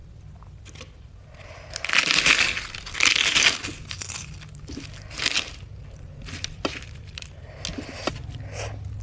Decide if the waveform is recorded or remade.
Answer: recorded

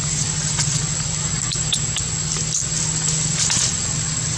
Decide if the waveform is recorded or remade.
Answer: recorded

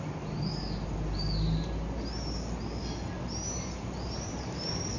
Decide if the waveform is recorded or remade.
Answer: recorded